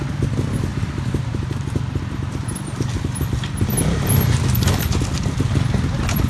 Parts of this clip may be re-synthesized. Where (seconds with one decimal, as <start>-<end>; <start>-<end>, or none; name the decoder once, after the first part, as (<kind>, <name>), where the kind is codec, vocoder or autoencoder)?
none